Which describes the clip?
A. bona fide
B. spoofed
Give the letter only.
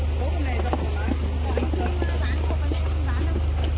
A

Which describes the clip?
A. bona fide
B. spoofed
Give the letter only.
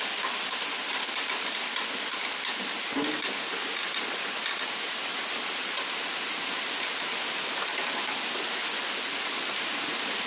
A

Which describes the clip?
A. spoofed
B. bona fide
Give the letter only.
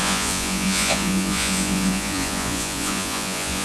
A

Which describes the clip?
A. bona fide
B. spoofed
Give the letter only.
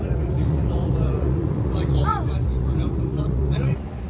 B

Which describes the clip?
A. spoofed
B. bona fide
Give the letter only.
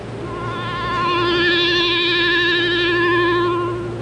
B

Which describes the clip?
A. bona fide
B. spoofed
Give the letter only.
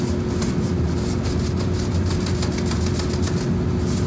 A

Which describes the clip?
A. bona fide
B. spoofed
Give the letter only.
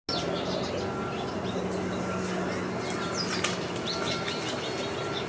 A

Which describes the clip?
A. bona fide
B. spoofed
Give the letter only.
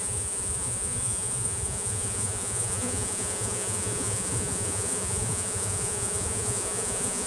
B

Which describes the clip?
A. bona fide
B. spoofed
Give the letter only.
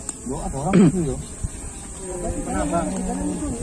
A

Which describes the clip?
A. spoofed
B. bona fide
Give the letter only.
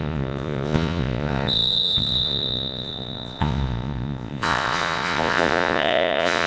A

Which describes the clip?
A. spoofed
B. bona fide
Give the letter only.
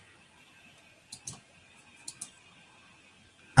B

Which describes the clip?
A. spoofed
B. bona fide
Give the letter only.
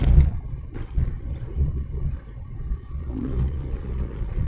A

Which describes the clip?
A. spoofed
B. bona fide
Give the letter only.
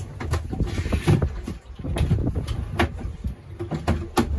B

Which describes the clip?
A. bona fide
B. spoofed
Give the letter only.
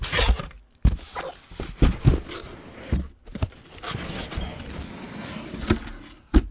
A